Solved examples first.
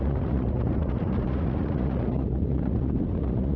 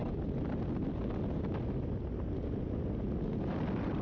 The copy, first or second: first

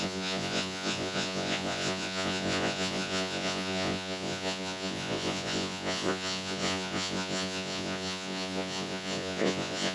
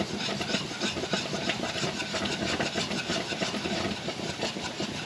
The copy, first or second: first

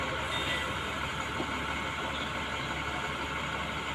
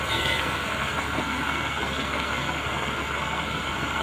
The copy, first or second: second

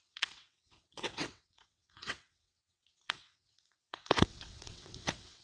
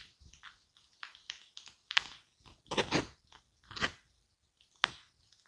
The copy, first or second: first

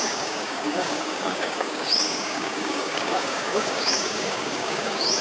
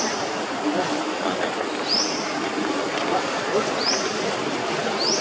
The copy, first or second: first